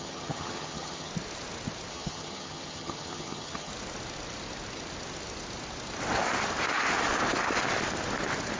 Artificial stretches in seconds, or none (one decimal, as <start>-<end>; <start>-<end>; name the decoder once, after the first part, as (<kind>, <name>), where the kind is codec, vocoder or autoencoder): 0.0-1.1 (vocoder, HiFi-GAN); 1.9-3.7